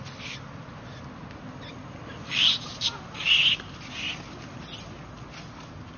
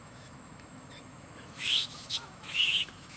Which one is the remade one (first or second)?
second